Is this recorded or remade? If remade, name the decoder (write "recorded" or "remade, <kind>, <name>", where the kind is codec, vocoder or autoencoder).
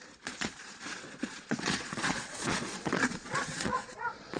remade, vocoder, Vocos